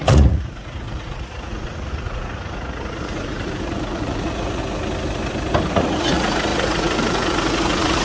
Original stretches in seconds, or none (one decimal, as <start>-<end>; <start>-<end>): 4.6-5.7